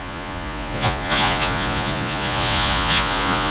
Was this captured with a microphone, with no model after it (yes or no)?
no